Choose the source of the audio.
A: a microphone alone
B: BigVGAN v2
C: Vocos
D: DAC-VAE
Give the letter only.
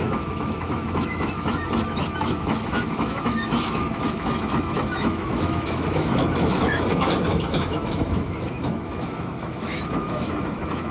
D